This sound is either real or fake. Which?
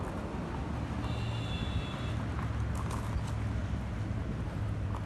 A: real